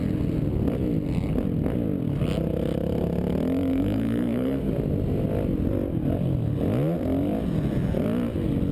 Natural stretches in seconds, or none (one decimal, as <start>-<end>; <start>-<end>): 0.0-3.7; 4.7-8.7